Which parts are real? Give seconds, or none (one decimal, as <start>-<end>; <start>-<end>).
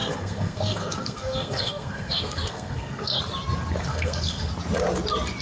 3.2-3.9; 4.5-5.4